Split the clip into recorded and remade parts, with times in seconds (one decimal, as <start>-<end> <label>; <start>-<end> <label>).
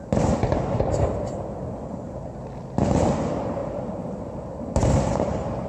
0.0-3.6 recorded; 3.6-4.2 remade; 4.2-5.7 recorded